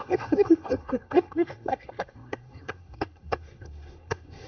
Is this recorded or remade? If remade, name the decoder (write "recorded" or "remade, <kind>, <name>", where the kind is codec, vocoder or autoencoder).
remade, codec, SNAC